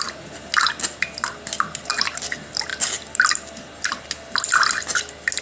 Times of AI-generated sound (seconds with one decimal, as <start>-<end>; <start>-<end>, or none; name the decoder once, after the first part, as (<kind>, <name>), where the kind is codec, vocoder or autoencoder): none